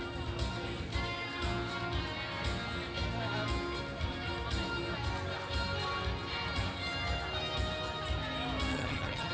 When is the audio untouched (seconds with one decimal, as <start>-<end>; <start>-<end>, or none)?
0.0-8.7